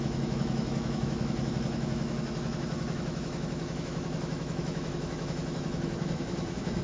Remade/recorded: remade